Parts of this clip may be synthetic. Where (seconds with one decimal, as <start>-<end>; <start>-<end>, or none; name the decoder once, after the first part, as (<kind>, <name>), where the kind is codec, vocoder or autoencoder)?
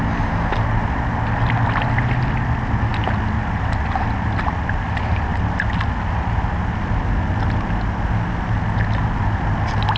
none